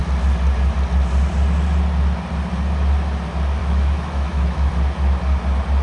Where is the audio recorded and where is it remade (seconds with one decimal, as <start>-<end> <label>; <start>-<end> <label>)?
0.0-3.6 recorded; 3.6-4.7 remade; 4.7-5.8 recorded